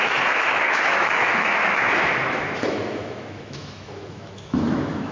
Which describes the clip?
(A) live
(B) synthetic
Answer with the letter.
B